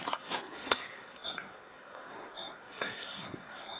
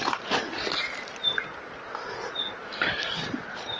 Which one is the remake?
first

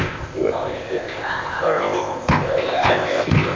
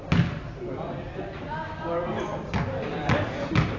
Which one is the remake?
first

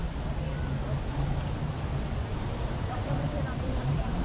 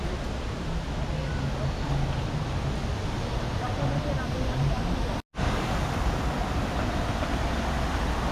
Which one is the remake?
first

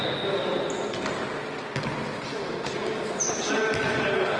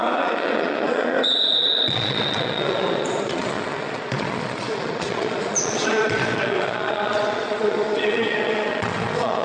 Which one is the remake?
second